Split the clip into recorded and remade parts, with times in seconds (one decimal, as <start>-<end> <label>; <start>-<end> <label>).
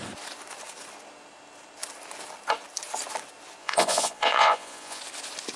0.0-3.6 recorded; 3.6-5.0 remade; 5.0-5.6 recorded